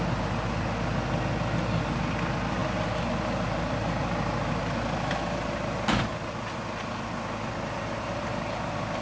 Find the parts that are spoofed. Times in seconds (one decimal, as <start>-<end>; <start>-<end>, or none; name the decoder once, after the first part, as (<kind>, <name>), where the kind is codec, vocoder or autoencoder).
none